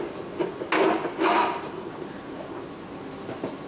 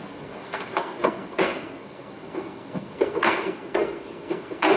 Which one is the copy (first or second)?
second